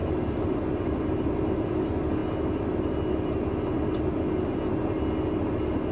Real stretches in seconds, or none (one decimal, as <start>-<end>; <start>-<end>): 1.8-5.9

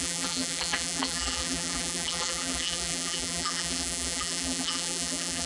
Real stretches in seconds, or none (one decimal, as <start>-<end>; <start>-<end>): none

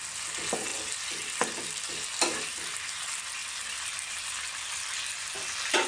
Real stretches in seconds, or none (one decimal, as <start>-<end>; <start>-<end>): 0.0-0.7; 2.3-3.4; 5.3-5.9

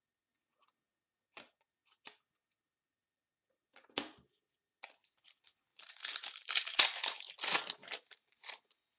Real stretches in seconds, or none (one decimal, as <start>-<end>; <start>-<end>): 0.0-5.7; 7.3-7.8; 8.6-9.0